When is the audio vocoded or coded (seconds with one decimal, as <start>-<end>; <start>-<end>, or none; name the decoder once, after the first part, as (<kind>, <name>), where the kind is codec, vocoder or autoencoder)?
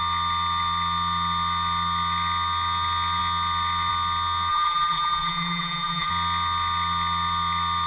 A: 4.5-6.1 (vocoder, BigVGAN v2)